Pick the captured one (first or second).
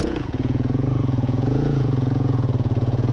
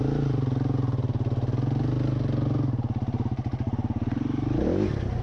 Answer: second